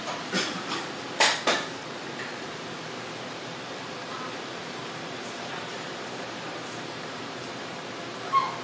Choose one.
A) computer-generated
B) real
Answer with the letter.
A